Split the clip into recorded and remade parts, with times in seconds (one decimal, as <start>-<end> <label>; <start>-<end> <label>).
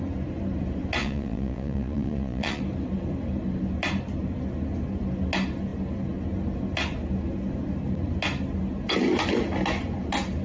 0.0-1.0 recorded; 1.0-2.6 remade; 2.6-10.4 recorded